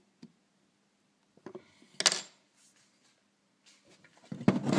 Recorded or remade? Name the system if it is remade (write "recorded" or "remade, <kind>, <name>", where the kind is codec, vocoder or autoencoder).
recorded